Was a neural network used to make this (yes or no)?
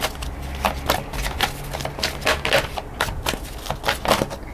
no